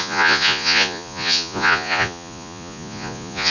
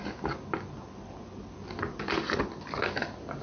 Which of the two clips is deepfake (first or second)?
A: first